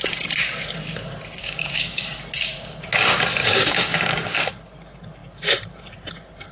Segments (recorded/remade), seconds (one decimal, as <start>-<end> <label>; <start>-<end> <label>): 0.0-1.4 recorded; 1.4-2.0 remade; 2.0-3.4 recorded; 3.4-4.5 remade; 4.5-6.5 recorded